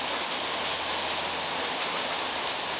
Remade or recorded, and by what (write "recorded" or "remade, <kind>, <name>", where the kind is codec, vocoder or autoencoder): recorded